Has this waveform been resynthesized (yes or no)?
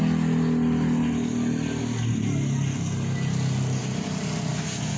no